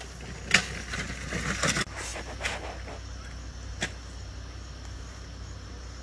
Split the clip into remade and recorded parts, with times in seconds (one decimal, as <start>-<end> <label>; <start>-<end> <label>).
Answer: 0.0-6.0 recorded